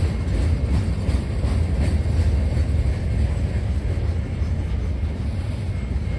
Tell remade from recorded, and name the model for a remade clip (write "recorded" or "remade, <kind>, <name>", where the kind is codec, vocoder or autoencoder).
recorded